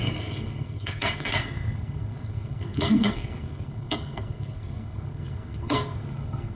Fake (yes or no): yes